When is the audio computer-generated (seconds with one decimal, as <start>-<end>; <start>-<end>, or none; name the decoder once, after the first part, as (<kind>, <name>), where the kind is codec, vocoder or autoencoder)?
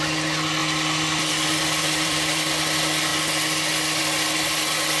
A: 1.8-2.5 (vocoder, BigVGAN v2)